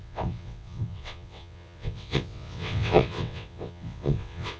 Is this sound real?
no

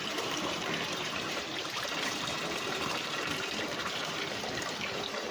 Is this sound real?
no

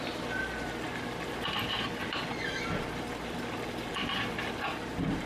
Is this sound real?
no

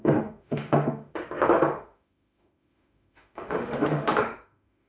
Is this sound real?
no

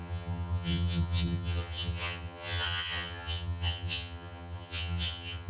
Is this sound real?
no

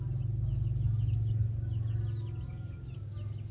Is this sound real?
yes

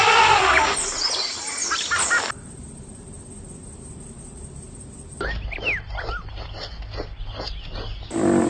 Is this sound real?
yes